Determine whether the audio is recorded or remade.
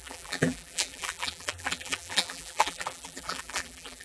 remade